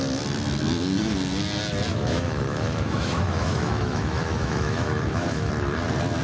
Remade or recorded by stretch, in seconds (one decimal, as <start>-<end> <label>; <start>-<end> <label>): 0.0-1.9 recorded; 1.9-5.5 remade; 5.5-6.2 recorded